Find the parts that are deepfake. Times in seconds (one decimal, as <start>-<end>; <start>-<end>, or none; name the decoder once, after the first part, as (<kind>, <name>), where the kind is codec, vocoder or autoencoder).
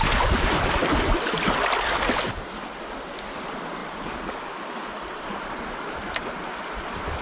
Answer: 0.8-2.8 (vocoder, BigVGAN v2); 3.8-4.5